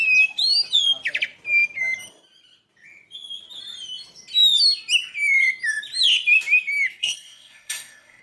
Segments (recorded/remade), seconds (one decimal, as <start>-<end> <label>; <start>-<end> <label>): 0.0-7.0 recorded; 7.0-8.2 remade